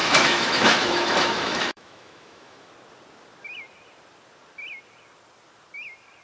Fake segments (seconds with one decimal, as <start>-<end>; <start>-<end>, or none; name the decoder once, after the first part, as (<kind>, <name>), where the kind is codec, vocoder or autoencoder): 0.0-2.7 (autoencoder, DAC-VAE)